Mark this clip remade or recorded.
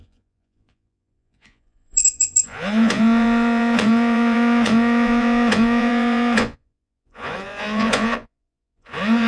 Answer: remade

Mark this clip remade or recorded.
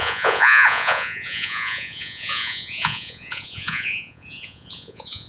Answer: remade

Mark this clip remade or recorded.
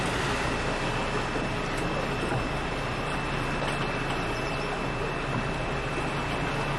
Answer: recorded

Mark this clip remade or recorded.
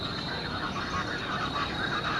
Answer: recorded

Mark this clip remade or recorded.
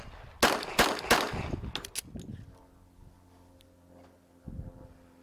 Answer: recorded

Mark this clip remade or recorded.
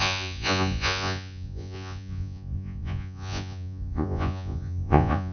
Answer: remade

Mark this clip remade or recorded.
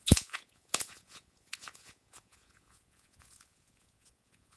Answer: remade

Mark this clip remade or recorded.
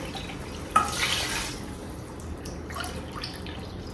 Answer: recorded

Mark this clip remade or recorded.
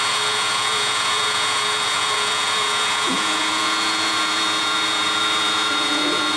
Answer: remade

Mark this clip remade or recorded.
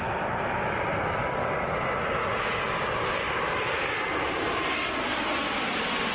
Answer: recorded